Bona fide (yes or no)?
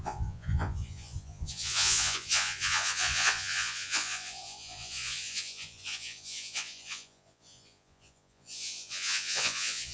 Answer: no